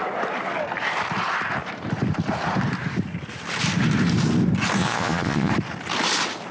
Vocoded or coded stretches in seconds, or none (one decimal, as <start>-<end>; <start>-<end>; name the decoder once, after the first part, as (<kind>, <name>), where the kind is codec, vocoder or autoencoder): 4.8-5.5 (vocoder, Vocos)